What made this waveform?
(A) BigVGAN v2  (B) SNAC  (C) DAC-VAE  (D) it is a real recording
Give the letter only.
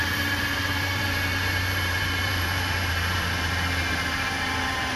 A